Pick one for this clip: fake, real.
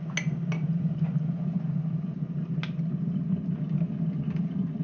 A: real